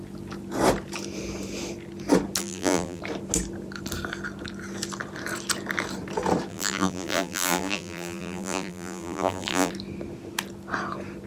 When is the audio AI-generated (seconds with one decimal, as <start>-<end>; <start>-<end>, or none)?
2.4-3.0; 6.5-9.7